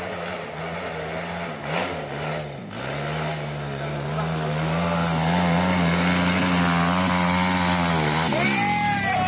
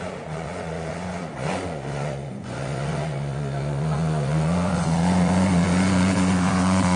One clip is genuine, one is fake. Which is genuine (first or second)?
first